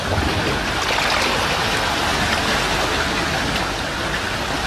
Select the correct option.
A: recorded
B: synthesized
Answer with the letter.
A